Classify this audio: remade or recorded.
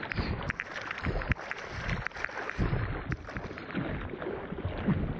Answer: recorded